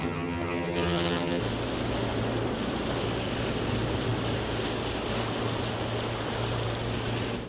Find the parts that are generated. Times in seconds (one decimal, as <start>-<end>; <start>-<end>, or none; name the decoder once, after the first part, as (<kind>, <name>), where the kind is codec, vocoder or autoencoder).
0.0-1.4 (vocoder, HiFi-GAN)